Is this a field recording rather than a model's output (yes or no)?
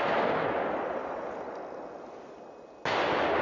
yes